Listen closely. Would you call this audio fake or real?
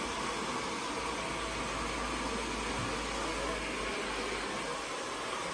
real